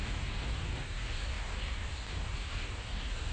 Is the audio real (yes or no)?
no